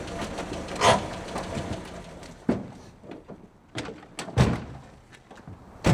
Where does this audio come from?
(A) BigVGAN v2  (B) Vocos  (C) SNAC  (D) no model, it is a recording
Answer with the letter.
D